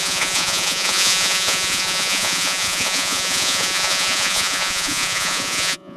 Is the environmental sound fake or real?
fake